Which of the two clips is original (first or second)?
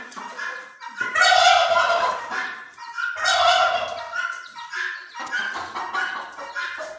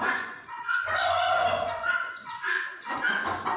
first